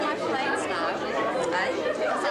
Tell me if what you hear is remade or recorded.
recorded